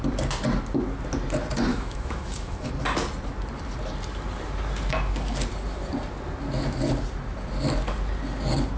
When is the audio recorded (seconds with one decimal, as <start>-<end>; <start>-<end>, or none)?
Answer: 0.0-1.7; 2.7-8.8